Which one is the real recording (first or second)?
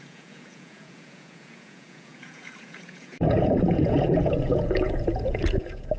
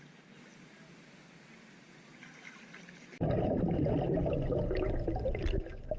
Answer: second